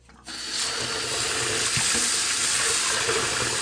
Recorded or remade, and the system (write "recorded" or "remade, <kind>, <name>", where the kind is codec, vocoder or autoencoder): recorded